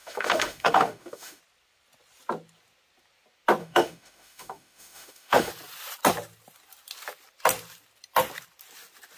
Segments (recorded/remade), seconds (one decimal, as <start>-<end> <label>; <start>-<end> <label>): 0.0-1.4 remade; 1.4-3.6 recorded; 3.6-5.5 remade; 5.5-9.2 recorded